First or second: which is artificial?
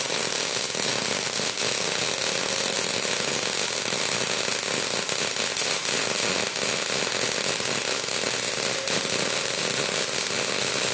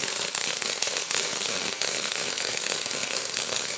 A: second